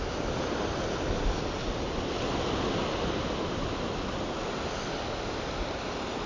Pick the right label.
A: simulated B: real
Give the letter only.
B